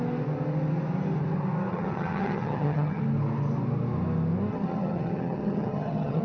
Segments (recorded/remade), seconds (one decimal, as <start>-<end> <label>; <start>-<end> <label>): 0.0-1.7 recorded; 1.7-3.0 remade; 3.0-4.5 recorded; 4.5-6.2 remade